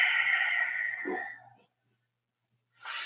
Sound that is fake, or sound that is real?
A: real